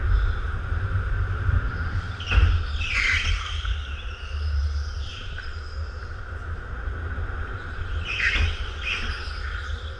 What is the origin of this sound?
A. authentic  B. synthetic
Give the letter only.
A